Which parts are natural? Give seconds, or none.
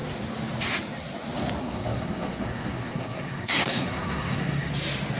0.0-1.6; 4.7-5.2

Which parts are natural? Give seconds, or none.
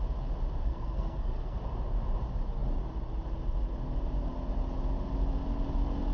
0.0-0.6; 1.6-6.1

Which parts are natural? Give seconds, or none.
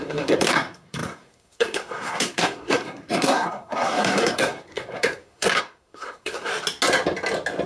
6.5-7.7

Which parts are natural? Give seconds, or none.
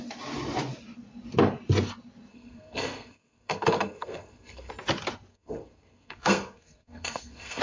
0.0-2.3; 4.7-5.3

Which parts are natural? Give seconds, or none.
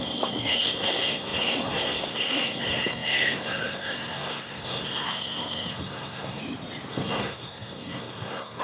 6.4-6.9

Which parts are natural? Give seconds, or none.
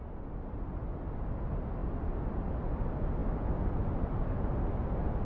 0.0-5.2